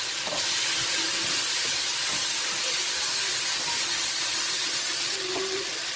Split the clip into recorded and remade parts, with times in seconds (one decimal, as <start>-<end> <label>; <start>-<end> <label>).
0.0-6.0 recorded